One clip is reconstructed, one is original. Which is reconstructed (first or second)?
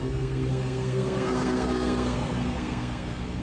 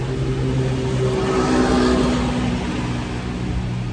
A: first